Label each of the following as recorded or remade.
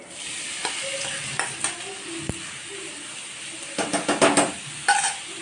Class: recorded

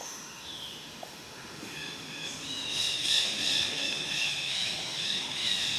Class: remade